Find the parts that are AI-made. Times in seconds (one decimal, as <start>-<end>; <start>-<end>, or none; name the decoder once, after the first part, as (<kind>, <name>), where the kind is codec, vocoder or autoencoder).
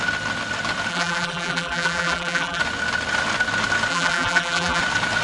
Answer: 0.9-2.6 (vocoder, BigVGAN v2); 3.9-4.8